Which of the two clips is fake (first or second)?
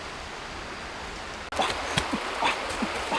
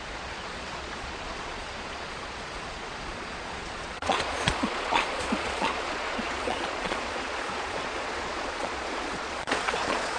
second